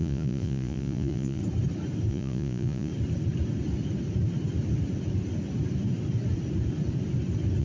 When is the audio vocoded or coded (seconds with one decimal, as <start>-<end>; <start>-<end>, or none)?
0.0-1.4; 2.1-2.9